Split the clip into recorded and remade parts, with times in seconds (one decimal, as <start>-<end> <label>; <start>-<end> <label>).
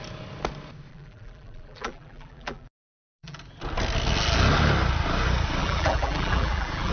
0.0-0.9 recorded; 0.9-3.4 remade; 3.4-5.6 recorded; 5.6-6.9 remade